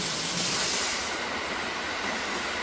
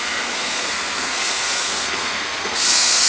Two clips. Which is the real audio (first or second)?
first